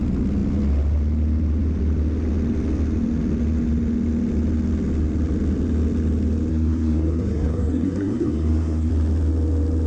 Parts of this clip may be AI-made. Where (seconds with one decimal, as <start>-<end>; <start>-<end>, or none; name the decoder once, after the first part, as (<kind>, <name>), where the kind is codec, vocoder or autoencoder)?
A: 6.5-8.9 (codec, SNAC)